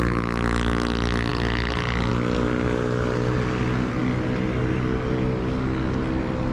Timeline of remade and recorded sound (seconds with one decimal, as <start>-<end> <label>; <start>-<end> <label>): 0.0-6.5 recorded